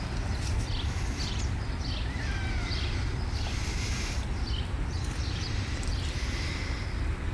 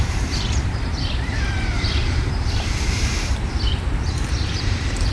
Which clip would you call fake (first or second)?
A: second